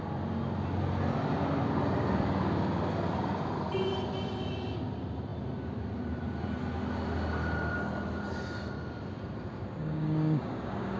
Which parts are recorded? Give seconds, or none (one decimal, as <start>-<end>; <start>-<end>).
0.0-9.8